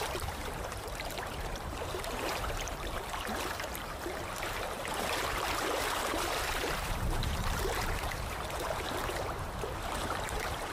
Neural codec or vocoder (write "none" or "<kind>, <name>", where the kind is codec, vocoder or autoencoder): vocoder, BigVGAN v2